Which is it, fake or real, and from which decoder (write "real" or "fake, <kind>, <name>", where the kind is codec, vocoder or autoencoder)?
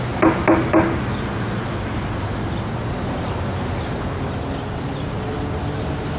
real